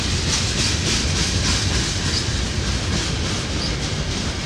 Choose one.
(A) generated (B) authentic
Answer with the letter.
B